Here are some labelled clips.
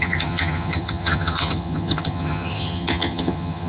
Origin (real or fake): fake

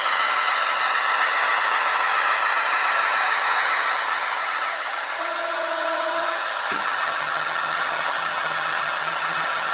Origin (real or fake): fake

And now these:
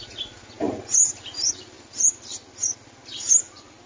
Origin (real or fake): real